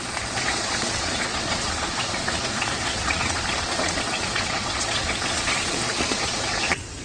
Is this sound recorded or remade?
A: remade